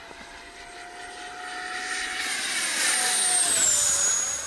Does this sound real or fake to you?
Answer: real